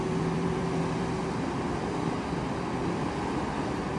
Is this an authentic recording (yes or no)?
no